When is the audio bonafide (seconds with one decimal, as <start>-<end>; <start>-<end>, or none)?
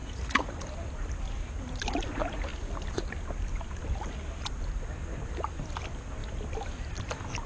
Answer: 0.5-7.5